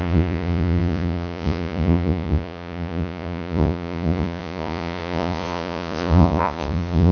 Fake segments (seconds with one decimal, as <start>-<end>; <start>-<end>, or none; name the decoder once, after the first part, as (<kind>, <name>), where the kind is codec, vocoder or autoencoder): 0.0-7.1 (vocoder, Vocos)